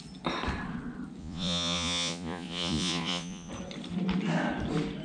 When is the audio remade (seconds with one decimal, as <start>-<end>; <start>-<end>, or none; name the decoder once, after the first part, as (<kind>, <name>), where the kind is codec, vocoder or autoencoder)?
1.2-3.5 (vocoder, Vocos)